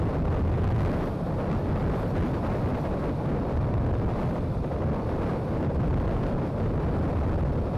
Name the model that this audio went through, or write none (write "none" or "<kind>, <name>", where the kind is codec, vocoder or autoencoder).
none